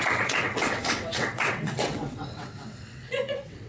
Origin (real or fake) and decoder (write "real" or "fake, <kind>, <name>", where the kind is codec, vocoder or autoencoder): fake, vocoder, WaveNeXt